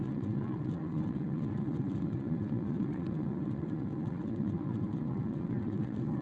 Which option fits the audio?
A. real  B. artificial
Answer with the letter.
B